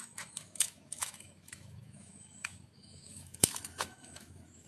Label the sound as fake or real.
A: fake